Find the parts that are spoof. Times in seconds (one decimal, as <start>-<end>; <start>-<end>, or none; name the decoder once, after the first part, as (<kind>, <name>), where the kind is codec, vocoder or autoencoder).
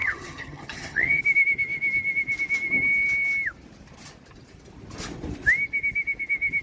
0.0-1.2 (vocoder, HiFi-GAN)